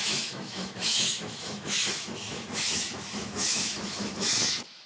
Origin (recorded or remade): remade